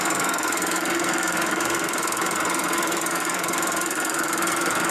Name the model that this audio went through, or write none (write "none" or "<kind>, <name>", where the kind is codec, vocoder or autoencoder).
codec, SNAC